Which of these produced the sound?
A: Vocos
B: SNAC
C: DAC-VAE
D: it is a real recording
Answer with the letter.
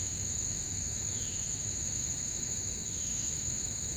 C